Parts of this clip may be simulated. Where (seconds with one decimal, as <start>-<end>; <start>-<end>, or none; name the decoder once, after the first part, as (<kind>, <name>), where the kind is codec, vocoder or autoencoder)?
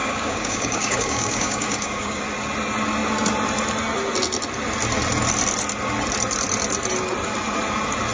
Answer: 0.0-2.2 (codec, DAC)